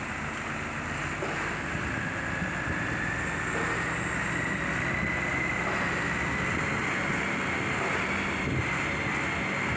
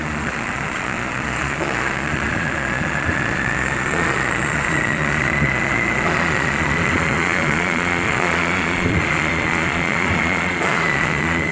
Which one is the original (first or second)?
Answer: first